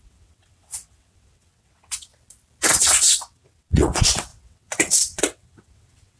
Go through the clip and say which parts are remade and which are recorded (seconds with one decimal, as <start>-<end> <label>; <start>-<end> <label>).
0.0-2.1 remade; 2.1-2.8 recorded; 2.8-6.2 remade